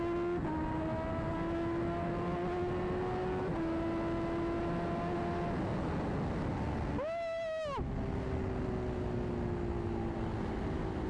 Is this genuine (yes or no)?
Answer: yes